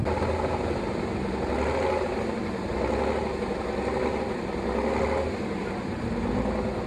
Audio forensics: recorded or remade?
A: recorded